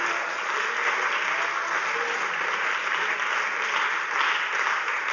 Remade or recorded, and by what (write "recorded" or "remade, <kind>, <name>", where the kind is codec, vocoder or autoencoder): recorded